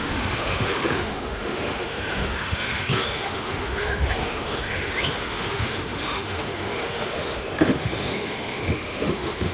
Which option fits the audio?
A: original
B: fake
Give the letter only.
B